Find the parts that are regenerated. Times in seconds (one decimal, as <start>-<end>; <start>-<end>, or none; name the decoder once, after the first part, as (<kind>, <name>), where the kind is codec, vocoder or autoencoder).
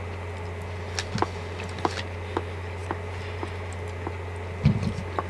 none